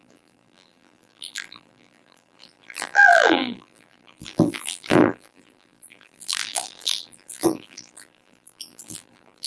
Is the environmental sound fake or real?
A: fake